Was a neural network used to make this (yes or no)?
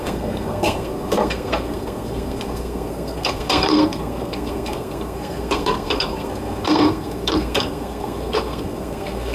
yes